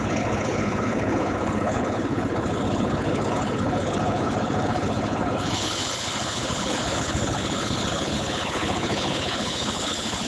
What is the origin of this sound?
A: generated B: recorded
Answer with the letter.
A